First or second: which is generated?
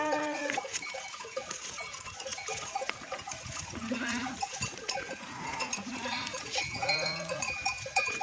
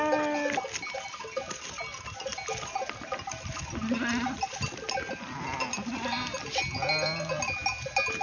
first